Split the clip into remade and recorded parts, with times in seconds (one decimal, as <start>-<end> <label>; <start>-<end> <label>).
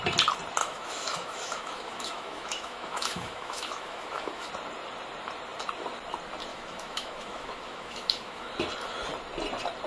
0.0-0.6 recorded; 0.6-4.5 remade; 4.5-6.5 recorded; 6.5-8.5 remade; 8.5-9.9 recorded